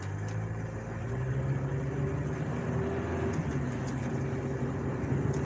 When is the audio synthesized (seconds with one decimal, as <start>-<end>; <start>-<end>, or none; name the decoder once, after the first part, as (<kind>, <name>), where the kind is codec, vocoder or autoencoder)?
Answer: none